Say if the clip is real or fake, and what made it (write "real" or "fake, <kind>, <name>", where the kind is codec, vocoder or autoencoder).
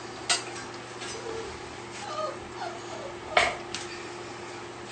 real